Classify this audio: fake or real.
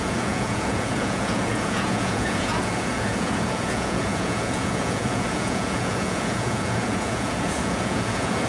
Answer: fake